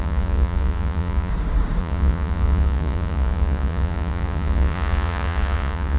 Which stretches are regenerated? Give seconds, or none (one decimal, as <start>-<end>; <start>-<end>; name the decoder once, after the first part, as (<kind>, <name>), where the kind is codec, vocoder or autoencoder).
0.0-1.3 (vocoder, Vocos); 1.8-6.0